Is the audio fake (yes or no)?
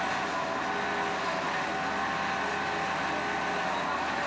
no